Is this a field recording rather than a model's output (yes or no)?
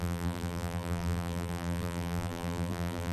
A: no